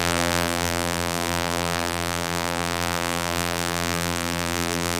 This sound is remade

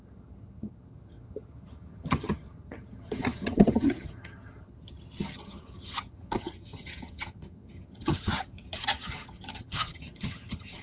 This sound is remade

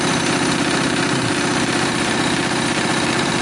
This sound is remade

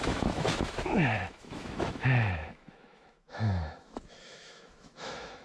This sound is remade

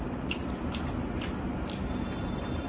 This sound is recorded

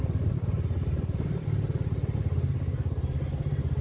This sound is recorded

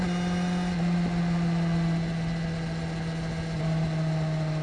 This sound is recorded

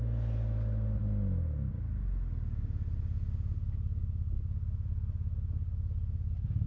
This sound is recorded